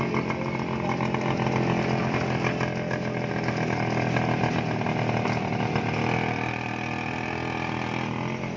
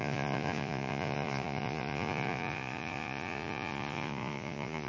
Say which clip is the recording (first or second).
first